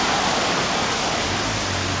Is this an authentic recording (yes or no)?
yes